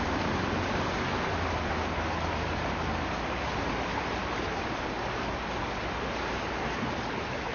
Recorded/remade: recorded